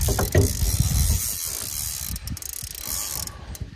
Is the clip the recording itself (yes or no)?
yes